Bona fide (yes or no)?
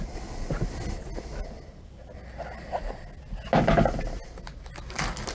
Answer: yes